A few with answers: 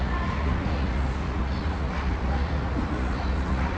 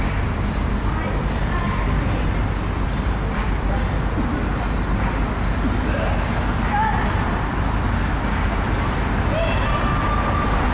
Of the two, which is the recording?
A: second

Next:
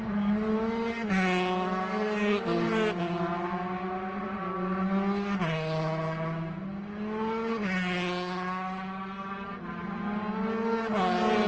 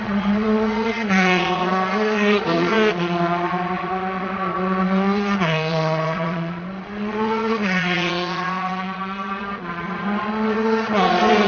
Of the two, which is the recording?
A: first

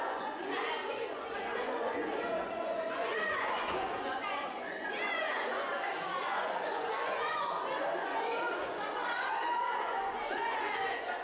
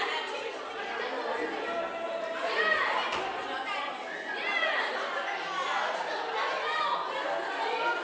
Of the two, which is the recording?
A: second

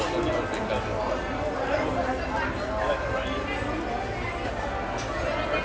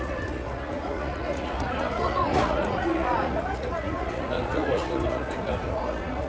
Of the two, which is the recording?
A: first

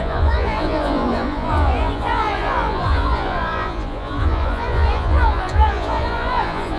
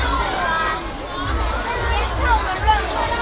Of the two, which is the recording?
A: second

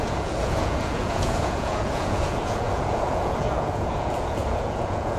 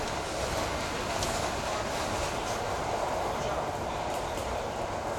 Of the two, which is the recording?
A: second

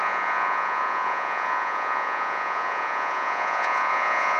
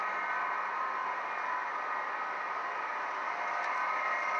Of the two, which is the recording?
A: second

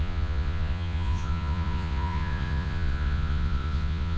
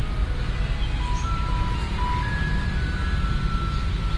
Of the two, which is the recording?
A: second